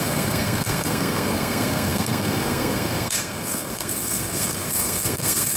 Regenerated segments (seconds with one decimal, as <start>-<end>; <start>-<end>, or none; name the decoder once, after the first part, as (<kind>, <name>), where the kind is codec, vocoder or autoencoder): 0.0-5.6 (codec, SNAC)